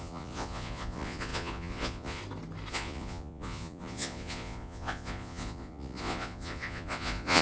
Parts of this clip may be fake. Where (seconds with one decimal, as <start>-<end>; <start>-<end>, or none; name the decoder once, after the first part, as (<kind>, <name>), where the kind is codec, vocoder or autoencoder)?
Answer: 0.0-2.2 (vocoder, Vocos); 2.7-7.4